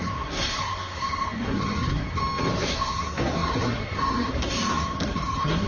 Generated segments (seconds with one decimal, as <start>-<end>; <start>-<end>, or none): 0.0-2.2; 2.7-5.7